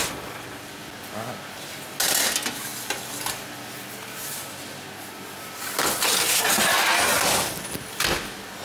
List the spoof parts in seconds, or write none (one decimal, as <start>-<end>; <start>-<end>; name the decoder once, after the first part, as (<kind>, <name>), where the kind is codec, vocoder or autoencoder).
none